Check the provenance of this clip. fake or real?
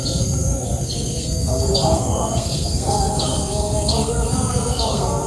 fake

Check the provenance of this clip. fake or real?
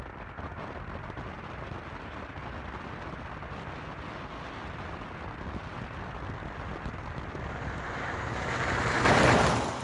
real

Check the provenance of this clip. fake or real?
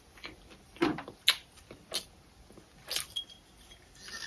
real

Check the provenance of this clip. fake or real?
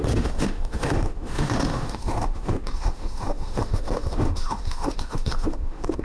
fake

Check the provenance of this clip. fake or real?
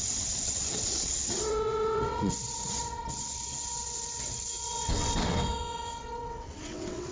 fake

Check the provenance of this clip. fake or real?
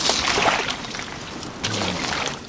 real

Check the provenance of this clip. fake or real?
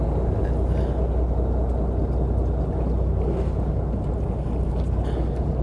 real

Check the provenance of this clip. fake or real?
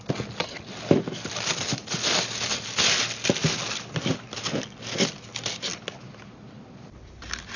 real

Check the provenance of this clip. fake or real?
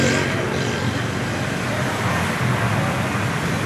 real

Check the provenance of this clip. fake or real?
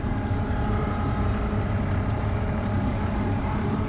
fake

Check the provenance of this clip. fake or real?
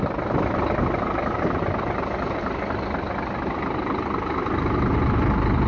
real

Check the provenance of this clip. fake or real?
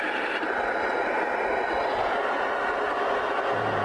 real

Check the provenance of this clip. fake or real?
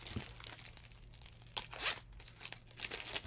real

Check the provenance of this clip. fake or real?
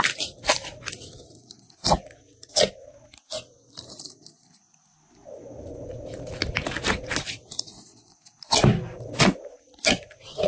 real